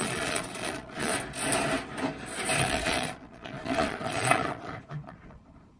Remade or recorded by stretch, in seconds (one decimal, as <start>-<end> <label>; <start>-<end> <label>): 0.0-1.1 remade; 1.1-2.6 recorded; 2.6-5.8 remade

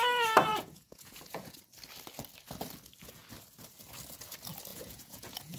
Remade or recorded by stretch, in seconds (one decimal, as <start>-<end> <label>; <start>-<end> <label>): 0.0-0.5 recorded; 0.5-1.6 remade; 1.6-4.7 recorded; 4.7-5.6 remade

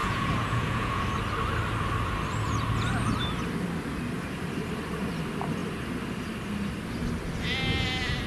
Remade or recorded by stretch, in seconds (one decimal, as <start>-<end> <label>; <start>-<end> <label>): 0.0-1.0 remade; 1.0-8.3 recorded

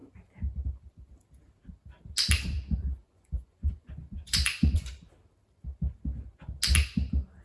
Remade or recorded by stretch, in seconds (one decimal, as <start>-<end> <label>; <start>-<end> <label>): 0.0-3.0 recorded; 3.0-4.9 remade; 4.9-7.4 recorded

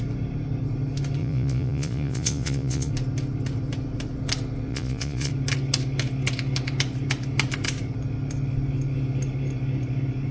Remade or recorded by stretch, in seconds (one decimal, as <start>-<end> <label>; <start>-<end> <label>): 0.0-1.2 recorded; 1.2-2.9 remade; 2.9-4.7 recorded; 4.7-5.3 remade; 5.3-10.3 recorded